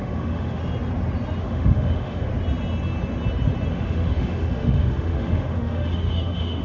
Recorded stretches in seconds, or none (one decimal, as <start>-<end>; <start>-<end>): 0.6-1.4; 2.3-3.7